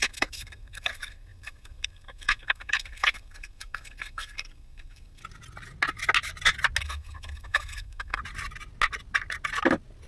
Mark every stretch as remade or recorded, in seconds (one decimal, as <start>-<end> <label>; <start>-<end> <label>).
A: 0.0-5.2 remade; 5.2-6.8 recorded; 6.8-8.2 remade; 8.2-10.1 recorded